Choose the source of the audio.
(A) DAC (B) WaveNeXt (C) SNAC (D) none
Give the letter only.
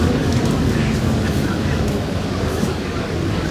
A